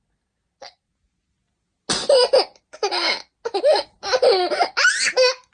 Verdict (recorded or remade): recorded